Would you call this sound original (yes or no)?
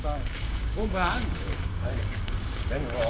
no